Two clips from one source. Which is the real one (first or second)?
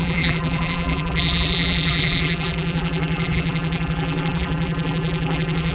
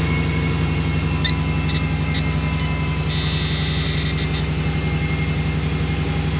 second